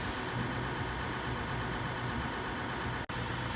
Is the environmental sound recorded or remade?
recorded